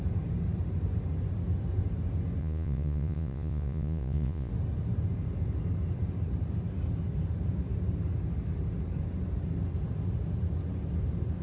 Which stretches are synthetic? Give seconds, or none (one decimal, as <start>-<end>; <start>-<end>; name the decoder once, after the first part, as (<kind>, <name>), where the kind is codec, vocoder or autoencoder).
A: 2.4-4.5 (vocoder, Vocos)